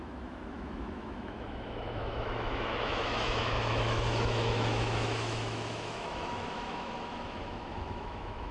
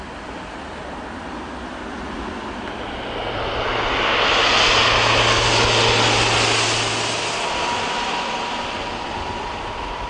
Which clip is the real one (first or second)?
second